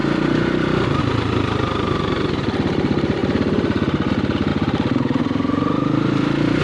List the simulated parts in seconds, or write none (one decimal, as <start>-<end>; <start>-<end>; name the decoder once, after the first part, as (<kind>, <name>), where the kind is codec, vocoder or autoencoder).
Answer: 0.0-6.6 (vocoder, BigVGAN v2)